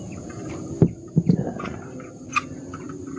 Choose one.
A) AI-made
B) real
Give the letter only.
A